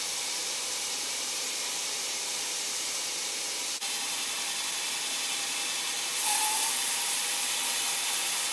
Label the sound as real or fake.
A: fake